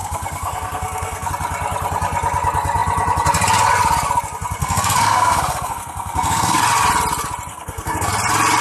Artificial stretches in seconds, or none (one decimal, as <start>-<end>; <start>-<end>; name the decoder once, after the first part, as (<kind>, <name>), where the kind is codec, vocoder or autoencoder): 0.0-1.3 (codec, SNAC); 4.6-6.6; 7.5-8.1